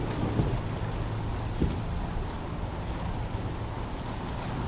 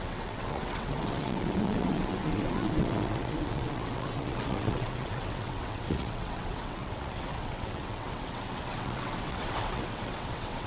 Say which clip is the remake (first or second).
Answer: second